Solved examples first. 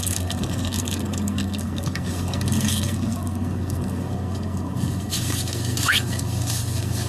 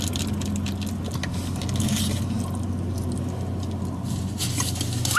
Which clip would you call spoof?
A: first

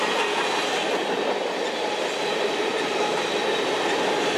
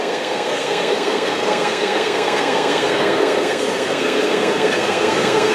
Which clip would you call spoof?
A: second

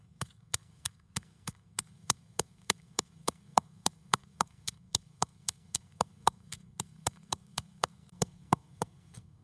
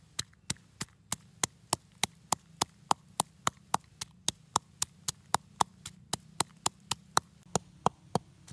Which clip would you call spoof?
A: first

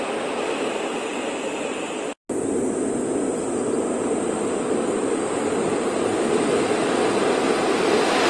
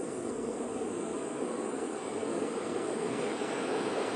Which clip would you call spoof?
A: second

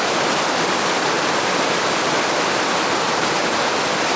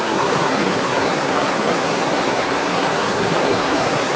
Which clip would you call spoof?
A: second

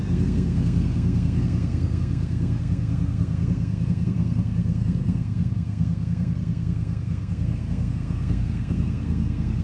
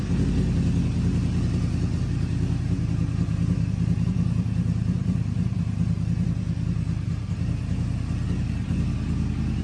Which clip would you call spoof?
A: first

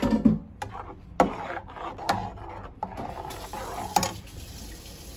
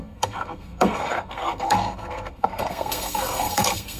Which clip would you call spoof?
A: second